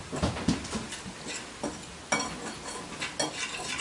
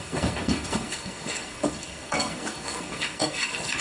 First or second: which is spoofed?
second